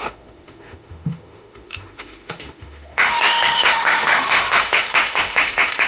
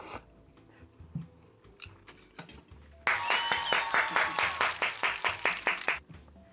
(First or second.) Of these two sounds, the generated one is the first